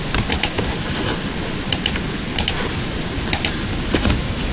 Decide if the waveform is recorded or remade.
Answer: recorded